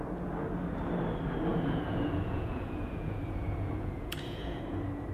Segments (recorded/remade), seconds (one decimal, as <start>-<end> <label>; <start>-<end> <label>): 0.0-1.5 recorded; 1.5-4.6 remade; 4.6-5.1 recorded